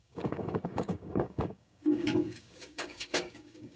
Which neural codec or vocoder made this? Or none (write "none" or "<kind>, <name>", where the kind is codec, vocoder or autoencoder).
codec, DAC